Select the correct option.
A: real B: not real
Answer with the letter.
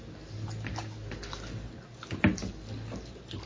A